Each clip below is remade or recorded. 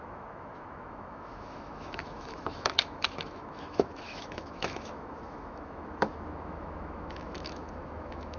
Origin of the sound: remade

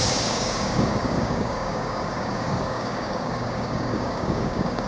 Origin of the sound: remade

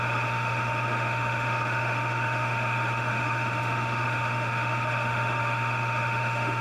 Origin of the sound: remade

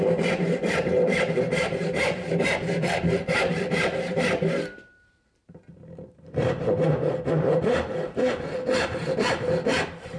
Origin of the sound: remade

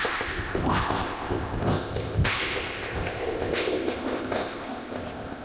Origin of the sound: remade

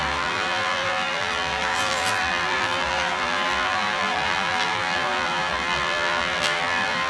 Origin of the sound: remade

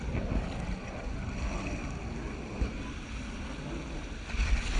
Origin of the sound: recorded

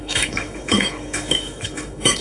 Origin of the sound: remade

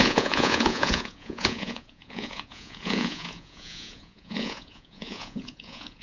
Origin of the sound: remade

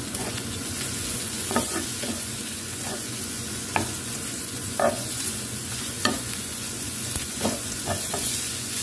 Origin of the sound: remade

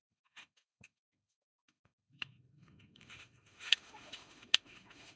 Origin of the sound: remade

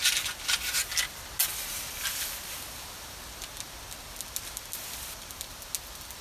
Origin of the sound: recorded